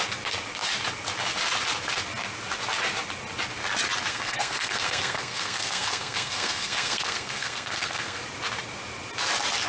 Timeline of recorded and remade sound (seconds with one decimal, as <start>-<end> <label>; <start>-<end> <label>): 0.0-4.1 recorded; 4.1-8.2 remade; 8.2-9.7 recorded